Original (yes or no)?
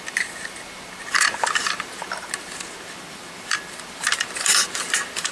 yes